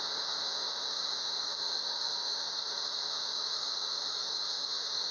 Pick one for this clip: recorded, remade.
remade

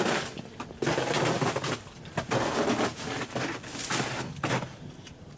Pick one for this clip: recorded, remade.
recorded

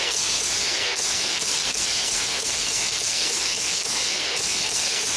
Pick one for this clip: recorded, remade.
remade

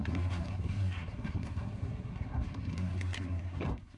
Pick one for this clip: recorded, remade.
remade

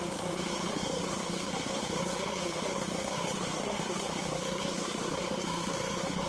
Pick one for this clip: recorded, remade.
remade